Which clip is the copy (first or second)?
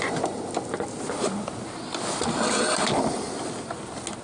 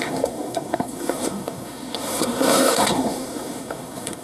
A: second